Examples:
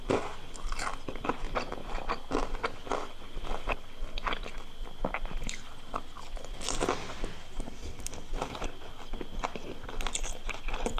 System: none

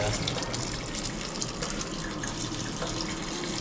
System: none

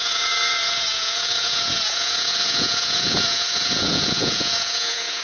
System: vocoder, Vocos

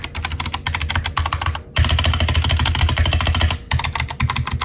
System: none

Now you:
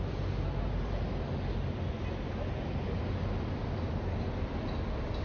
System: none